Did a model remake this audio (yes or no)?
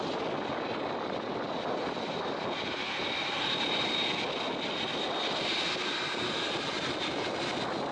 no